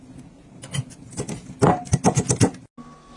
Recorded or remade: recorded